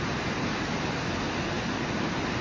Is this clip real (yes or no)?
yes